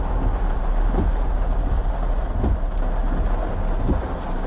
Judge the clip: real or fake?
real